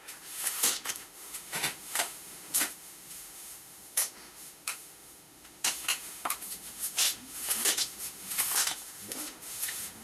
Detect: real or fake fake